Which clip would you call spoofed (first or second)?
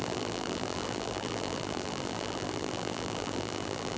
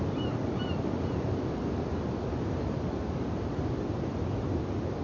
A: first